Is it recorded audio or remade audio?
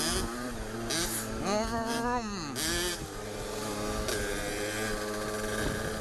recorded